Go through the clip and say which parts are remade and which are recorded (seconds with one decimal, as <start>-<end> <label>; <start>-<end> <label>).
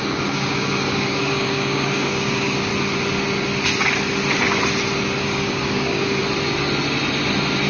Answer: 0.0-2.7 remade; 2.7-5.2 recorded; 5.2-6.2 remade; 6.2-7.7 recorded